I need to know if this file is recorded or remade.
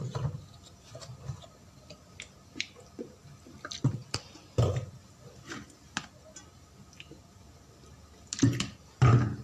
recorded